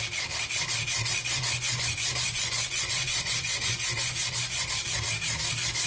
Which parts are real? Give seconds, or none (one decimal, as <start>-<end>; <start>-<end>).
0.0-1.2; 4.7-5.9